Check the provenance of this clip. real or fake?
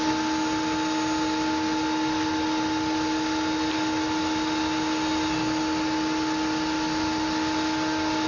real